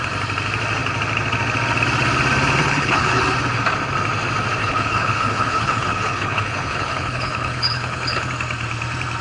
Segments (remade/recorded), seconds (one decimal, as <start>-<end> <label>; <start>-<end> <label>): 0.0-2.6 recorded; 2.6-3.2 remade; 3.2-4.6 recorded; 4.6-8.3 remade; 8.3-9.2 recorded